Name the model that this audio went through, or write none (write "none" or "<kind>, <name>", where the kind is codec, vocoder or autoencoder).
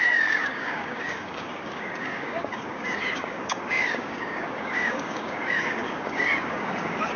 codec, DAC